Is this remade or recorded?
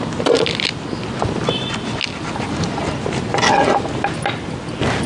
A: recorded